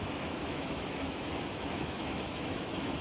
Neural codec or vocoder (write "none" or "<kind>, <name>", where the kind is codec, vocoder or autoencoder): autoencoder, DAC-VAE